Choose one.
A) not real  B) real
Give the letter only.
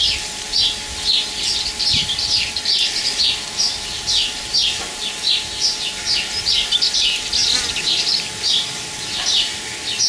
B